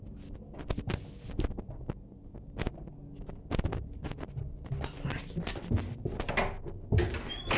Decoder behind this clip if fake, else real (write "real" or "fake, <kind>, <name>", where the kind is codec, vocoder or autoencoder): real